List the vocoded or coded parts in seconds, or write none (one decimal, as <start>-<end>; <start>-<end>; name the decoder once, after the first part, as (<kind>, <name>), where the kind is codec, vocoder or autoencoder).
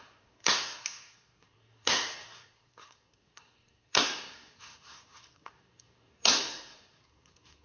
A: 0.0-7.6 (codec, SNAC)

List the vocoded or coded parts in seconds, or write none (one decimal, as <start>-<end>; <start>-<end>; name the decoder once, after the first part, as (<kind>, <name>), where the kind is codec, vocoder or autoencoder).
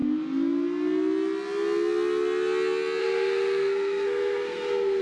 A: 3.0-5.0 (codec, SNAC)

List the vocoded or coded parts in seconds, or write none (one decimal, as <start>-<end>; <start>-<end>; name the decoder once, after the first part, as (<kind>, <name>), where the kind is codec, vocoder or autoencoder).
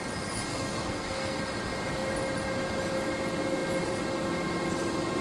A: 0.5-1.4 (codec, SNAC)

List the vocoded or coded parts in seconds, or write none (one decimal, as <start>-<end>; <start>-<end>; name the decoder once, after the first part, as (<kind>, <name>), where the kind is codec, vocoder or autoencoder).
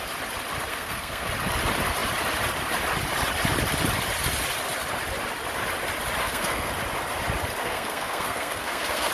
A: 0.7-1.3 (codec, SNAC); 6.2-6.7; 7.6-9.1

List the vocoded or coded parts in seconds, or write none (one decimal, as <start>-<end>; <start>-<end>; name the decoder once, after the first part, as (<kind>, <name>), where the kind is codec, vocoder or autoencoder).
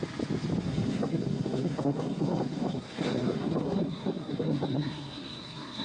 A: 0.6-5.8 (codec, SNAC)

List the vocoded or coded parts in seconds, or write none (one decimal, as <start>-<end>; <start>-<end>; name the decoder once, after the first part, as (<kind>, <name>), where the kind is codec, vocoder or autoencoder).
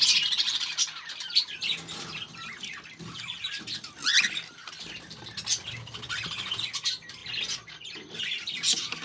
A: none